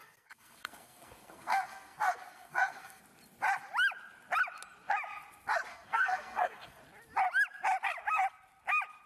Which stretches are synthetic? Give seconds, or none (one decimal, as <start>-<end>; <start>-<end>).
0.0-3.0; 5.7-6.8